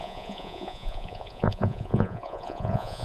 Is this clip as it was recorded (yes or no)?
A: no